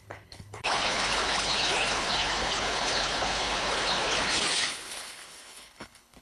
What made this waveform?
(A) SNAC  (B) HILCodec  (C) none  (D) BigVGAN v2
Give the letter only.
B